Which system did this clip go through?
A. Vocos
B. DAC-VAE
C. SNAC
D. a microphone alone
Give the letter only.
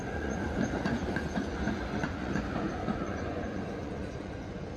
A